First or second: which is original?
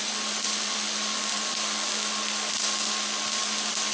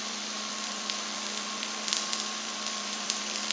first